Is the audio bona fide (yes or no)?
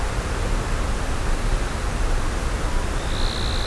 yes